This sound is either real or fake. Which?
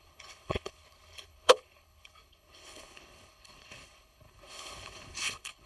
fake